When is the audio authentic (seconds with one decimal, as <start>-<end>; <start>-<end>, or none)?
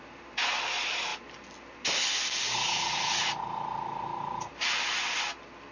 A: 0.0-5.7